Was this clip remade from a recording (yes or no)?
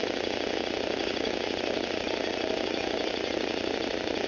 no